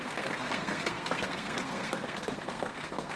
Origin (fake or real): fake